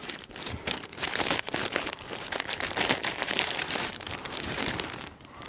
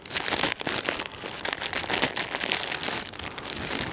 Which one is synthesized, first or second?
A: first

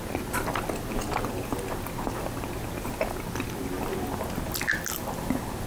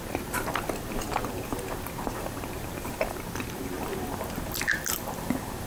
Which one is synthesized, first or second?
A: second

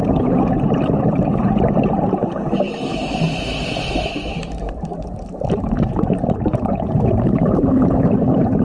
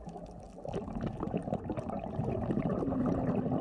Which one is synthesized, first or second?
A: first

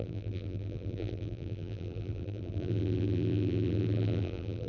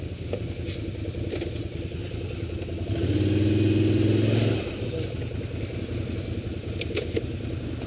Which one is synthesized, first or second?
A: first